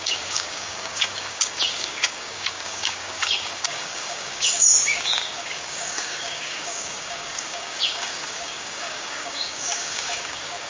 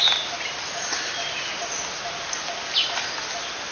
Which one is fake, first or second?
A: first